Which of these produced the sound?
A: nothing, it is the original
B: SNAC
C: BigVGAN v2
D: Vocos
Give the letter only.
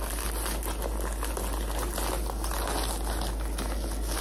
A